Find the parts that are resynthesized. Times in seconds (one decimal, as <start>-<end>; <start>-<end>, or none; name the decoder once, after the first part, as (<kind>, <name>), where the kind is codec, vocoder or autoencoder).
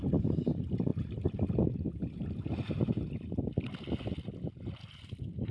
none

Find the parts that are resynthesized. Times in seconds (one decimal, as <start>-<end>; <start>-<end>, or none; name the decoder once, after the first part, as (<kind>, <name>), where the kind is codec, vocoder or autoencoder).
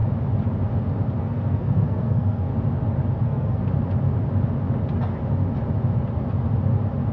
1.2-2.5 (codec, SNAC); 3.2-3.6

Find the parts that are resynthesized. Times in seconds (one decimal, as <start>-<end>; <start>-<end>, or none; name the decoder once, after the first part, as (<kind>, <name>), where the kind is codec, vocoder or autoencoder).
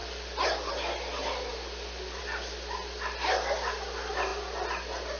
none